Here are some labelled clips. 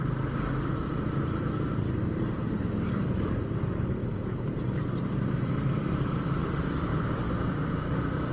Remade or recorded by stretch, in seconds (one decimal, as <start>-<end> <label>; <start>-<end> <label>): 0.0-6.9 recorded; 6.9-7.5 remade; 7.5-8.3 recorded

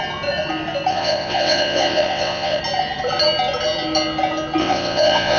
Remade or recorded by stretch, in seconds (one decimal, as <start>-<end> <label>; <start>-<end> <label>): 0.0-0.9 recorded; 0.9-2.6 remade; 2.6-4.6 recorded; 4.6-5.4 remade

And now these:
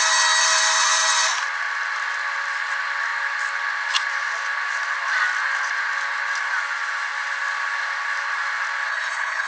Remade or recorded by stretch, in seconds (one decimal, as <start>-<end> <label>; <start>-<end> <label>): 0.0-8.9 recorded; 8.9-9.5 remade

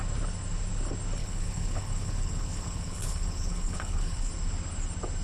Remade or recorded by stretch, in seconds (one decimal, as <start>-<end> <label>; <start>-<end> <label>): 0.0-1.2 recorded; 1.2-4.3 remade; 4.3-5.2 recorded